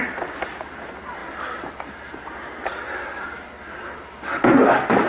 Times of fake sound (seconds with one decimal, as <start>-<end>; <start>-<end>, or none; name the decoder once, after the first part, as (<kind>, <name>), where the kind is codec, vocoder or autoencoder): none